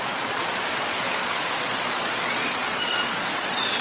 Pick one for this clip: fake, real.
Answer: fake